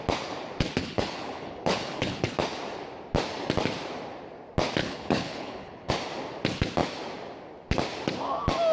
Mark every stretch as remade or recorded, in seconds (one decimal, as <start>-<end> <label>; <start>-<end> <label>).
0.0-0.8 recorded; 0.8-2.3 remade; 2.3-4.8 recorded; 4.8-5.9 remade; 5.9-8.7 recorded